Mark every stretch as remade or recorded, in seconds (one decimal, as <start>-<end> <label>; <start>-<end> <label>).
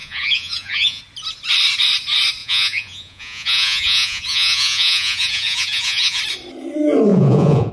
0.0-1.0 remade; 1.0-2.4 recorded; 2.4-6.2 remade; 6.2-7.1 recorded; 7.1-7.7 remade